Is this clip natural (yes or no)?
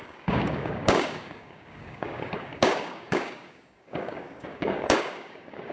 no